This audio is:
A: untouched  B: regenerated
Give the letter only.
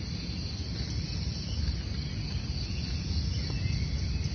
A